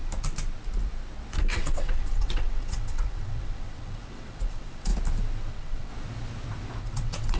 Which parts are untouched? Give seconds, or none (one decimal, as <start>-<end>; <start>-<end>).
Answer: 0.0-1.5; 4.9-5.5; 5.9-6.8